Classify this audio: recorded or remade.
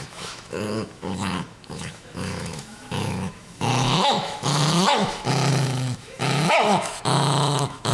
remade